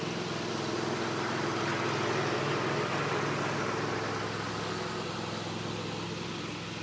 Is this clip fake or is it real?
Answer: real